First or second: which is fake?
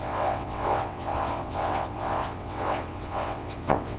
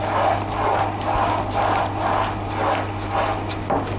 first